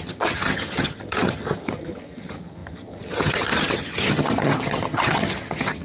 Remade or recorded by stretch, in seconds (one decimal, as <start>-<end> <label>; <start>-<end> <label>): 0.0-5.8 remade